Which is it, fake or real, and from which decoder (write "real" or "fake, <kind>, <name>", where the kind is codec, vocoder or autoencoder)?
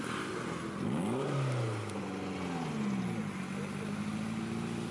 real